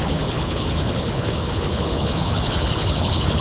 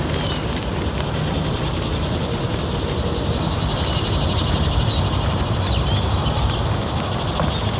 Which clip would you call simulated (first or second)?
first